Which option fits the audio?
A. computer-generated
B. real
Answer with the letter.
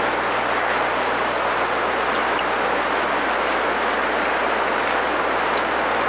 B